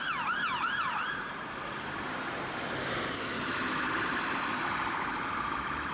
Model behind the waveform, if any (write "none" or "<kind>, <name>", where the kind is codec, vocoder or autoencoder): none